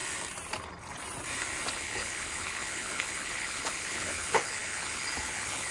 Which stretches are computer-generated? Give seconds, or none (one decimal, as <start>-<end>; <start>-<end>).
1.7-5.7